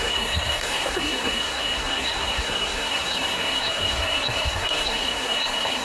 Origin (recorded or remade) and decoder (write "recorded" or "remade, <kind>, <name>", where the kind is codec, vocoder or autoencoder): remade, codec, SNAC